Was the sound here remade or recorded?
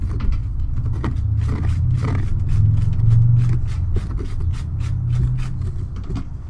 recorded